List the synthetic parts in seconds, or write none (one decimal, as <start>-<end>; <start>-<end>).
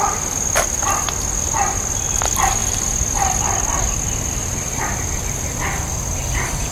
none